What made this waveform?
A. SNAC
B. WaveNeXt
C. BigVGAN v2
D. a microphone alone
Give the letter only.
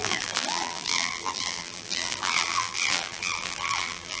C